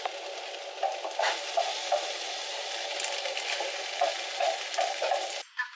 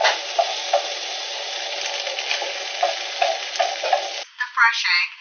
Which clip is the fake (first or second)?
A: first